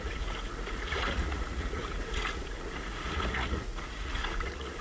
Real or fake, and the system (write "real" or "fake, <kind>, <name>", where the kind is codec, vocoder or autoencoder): fake, vocoder, Vocos